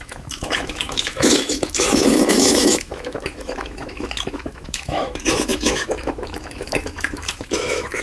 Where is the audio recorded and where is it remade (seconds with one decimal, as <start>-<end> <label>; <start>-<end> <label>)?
0.0-8.0 remade